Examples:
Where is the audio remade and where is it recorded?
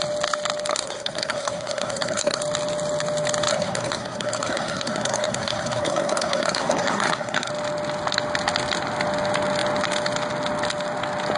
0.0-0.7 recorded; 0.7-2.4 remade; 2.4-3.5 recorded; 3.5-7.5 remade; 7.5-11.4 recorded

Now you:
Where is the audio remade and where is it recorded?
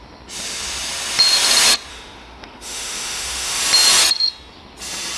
0.0-1.9 recorded; 1.9-3.6 remade; 3.6-5.2 recorded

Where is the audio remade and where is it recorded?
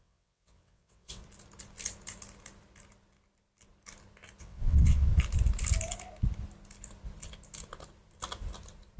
0.0-1.2 remade; 1.2-4.4 recorded; 4.4-5.1 remade; 5.1-9.0 recorded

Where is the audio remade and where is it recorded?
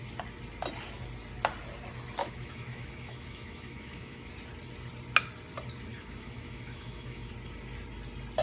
0.0-2.2 recorded; 2.2-4.3 remade; 4.3-5.9 recorded; 5.9-7.3 remade; 7.3-8.4 recorded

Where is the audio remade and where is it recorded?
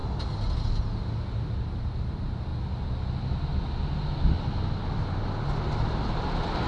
0.0-6.7 recorded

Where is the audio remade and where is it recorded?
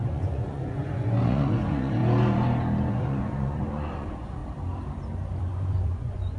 0.0-2.0 remade; 2.0-2.9 recorded; 2.9-4.4 remade; 4.4-5.4 recorded; 5.4-6.4 remade